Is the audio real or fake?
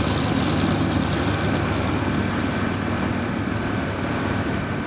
real